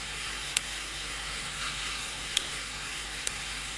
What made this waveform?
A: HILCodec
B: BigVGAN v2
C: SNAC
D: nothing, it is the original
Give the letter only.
C